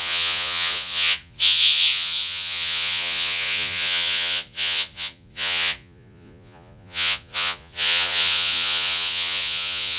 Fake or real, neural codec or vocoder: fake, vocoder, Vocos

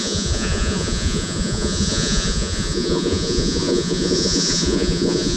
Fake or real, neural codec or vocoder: fake, vocoder, Vocos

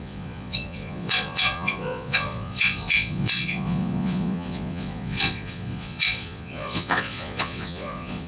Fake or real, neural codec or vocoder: fake, vocoder, Vocos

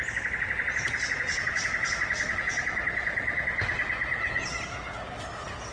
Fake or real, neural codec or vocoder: real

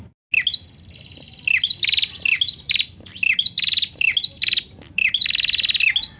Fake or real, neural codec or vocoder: real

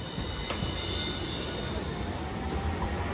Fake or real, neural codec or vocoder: real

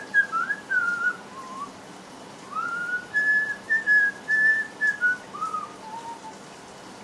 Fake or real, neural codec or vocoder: real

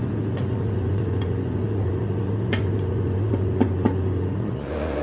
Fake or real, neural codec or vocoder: fake, vocoder, Vocos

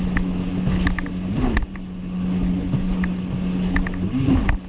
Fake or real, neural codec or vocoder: real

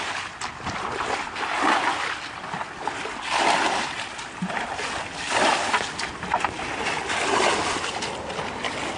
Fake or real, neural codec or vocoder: real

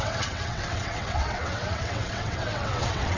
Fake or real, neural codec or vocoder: fake, vocoder, WaveNeXt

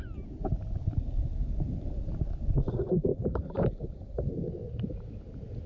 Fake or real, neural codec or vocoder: real